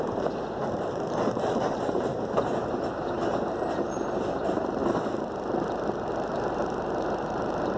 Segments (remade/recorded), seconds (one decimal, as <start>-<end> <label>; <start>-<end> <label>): 0.0-2.6 remade; 2.6-3.8 recorded; 3.8-4.8 remade; 4.8-6.5 recorded; 6.5-7.8 remade